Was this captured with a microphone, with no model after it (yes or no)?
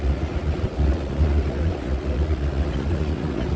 no